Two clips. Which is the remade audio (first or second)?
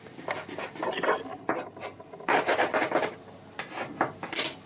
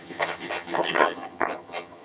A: second